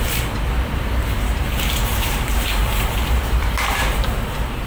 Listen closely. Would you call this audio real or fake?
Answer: fake